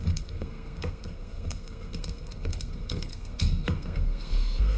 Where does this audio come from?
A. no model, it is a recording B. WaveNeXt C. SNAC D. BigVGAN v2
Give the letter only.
C